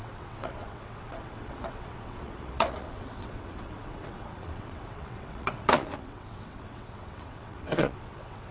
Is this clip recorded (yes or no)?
no